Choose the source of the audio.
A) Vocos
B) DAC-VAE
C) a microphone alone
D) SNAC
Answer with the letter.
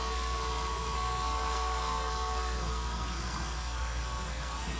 D